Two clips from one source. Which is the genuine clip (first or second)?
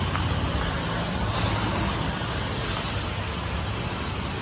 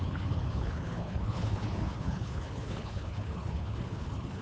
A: first